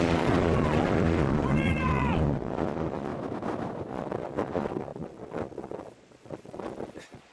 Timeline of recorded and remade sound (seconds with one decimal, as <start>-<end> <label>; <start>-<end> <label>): 0.0-3.1 remade; 3.1-3.9 recorded; 3.9-7.3 remade

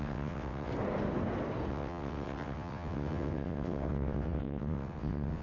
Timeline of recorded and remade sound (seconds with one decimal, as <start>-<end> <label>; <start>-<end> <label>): 0.0-0.7 remade; 0.7-1.7 recorded; 1.7-5.4 remade

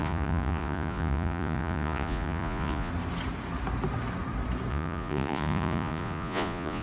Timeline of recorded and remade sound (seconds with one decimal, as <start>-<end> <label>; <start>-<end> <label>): 0.0-2.9 remade; 2.9-4.7 recorded; 4.7-6.8 remade

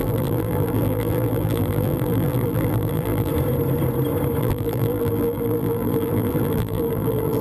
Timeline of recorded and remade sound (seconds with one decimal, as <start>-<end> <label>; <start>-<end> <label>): 0.0-3.3 remade; 3.3-4.4 recorded; 4.4-7.4 remade

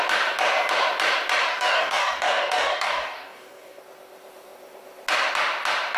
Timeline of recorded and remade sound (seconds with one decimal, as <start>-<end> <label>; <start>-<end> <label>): 0.0-1.5 recorded; 1.5-3.8 remade; 3.8-6.0 recorded

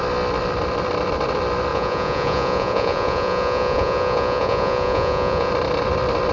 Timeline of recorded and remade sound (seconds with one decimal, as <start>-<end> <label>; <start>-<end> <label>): 0.0-1.7 recorded; 1.7-5.5 remade; 5.5-6.3 recorded